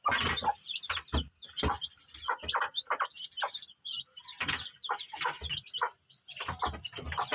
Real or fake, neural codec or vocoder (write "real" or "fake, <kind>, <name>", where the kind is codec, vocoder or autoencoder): real